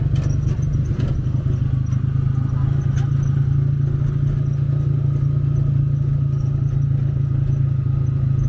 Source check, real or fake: real